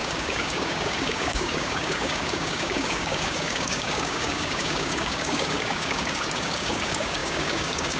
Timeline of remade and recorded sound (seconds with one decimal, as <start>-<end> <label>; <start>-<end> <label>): 0.0-8.0 remade